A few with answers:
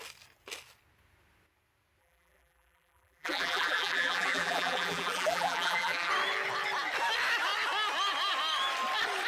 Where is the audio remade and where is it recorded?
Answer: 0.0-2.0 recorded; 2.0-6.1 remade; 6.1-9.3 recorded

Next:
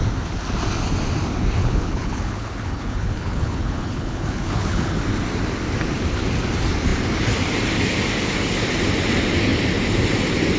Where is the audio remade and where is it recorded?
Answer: 0.0-1.6 recorded; 1.6-5.0 remade; 5.0-10.6 recorded